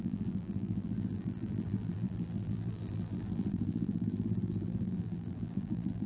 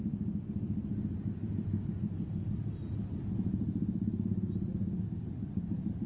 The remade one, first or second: first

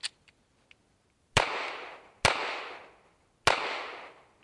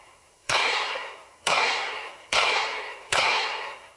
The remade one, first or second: second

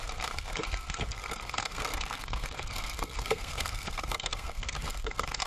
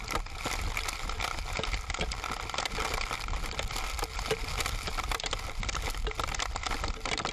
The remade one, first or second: first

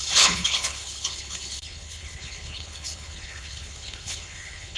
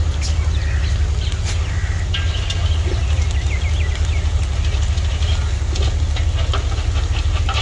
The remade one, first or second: first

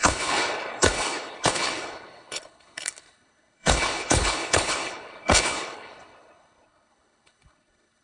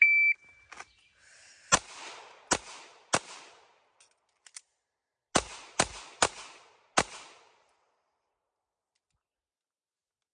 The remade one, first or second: first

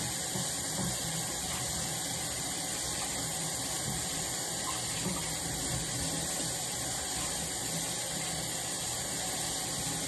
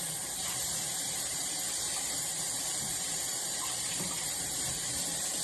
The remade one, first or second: second